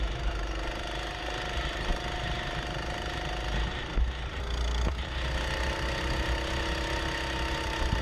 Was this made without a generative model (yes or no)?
yes